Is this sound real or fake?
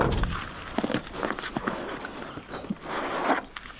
real